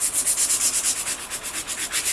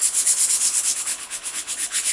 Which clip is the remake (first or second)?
second